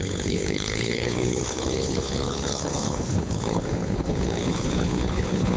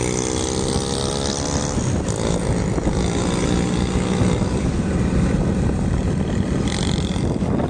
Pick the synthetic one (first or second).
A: first